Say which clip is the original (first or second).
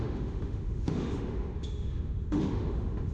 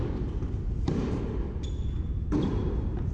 second